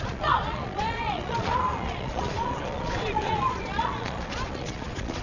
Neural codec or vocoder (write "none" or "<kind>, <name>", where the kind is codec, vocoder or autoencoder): vocoder, Vocos